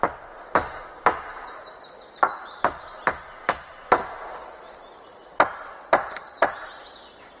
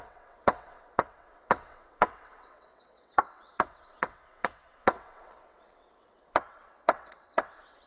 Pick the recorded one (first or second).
first